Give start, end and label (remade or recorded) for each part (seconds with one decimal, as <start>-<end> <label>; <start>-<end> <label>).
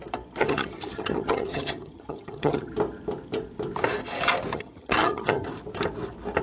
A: 0.0-0.4 recorded; 0.4-2.7 remade; 2.7-4.5 recorded; 4.5-5.4 remade; 5.4-6.4 recorded